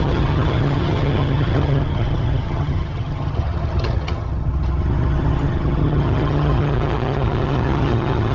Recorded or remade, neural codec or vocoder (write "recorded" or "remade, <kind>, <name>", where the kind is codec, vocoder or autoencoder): remade, vocoder, HiFi-GAN